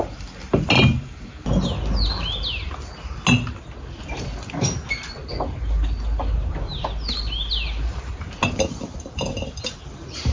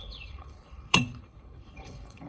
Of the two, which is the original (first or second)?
first